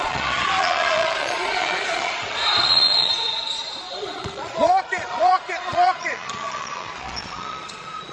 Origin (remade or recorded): remade